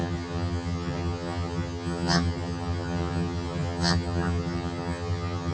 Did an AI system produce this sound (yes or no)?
yes